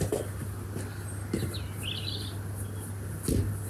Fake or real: real